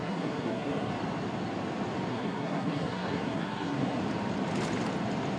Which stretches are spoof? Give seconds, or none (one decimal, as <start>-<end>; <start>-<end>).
0.0-0.9; 2.1-4.0